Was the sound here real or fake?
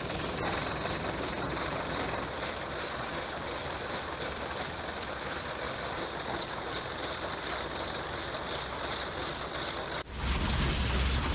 real